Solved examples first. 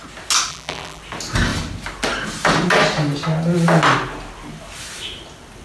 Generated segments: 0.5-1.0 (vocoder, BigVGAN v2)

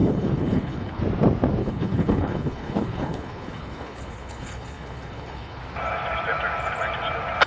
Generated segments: 0.0-1.0 (codec, HILCodec); 1.6-5.6

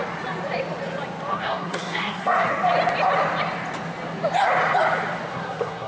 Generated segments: 1.3-2.5 (codec, SNAC); 5.3-5.9